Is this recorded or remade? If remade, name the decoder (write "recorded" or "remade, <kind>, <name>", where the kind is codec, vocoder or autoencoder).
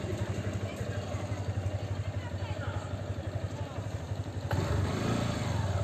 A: recorded